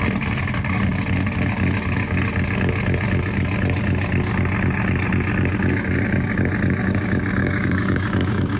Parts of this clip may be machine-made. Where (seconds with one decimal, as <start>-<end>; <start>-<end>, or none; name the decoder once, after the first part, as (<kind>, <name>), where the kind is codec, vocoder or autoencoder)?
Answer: 7.4-8.6 (codec, DAC)